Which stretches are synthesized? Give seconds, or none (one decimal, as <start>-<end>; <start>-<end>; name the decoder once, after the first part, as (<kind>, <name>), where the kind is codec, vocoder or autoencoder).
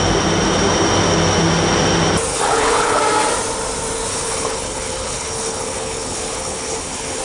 2.3-3.0 (codec, HILCodec); 4.1-7.2